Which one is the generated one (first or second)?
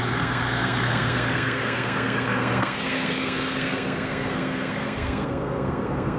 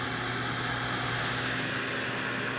first